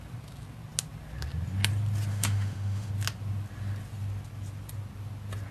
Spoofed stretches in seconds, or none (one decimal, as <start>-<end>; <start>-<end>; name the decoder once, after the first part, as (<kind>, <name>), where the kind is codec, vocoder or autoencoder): 2.1-2.9 (autoencoder, DAC-VAE)